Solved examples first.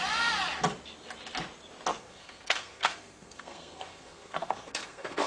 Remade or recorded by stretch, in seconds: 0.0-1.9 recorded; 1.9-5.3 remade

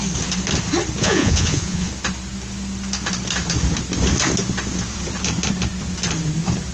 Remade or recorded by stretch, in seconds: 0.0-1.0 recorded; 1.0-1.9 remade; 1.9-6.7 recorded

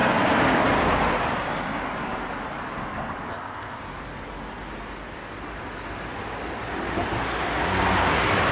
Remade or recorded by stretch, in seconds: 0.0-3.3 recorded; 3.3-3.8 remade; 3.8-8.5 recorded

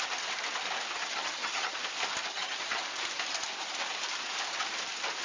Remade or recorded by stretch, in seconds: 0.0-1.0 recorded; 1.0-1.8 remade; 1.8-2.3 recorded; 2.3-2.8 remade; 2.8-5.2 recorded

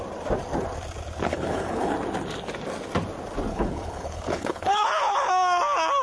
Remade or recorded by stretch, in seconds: 0.0-1.3 recorded; 1.3-1.9 remade; 1.9-3.5 recorded; 3.5-5.3 remade; 5.3-6.0 recorded